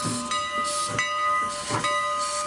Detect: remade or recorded recorded